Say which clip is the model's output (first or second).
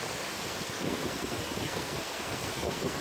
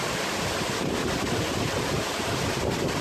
first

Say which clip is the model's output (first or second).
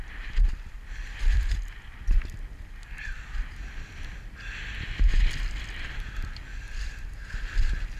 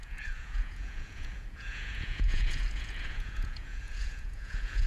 second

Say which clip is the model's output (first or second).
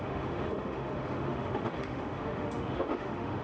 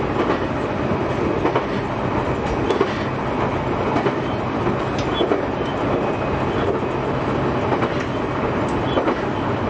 first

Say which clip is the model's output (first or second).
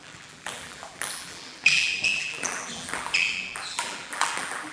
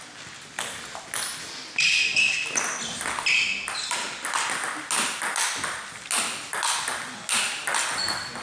first